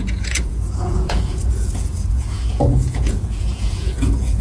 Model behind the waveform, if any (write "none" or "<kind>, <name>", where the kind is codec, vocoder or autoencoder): vocoder, Vocos